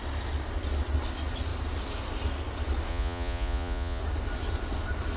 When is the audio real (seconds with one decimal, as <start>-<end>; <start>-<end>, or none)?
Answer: 0.0-2.9; 4.0-5.2